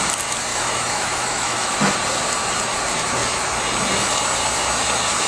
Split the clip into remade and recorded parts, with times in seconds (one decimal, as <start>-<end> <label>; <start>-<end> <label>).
0.0-0.5 recorded; 0.5-1.9 remade; 1.9-5.3 recorded